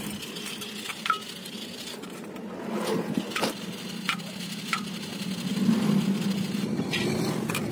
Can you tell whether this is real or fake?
real